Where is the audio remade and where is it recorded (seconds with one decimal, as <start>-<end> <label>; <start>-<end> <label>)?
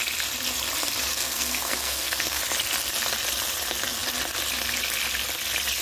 0.0-1.1 recorded; 1.1-2.4 remade; 2.4-5.8 recorded